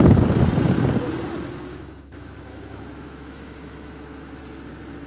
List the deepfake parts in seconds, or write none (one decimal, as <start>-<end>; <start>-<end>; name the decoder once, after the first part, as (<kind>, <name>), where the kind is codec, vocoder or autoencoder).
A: 1.7-4.4 (autoencoder, DAC-VAE)